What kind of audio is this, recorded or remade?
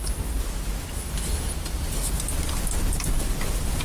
recorded